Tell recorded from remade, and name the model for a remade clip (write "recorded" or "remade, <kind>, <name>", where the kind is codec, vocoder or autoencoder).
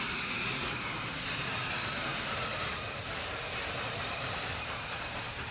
remade, vocoder, BigVGAN v2